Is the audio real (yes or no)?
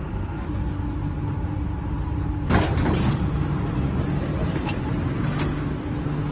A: yes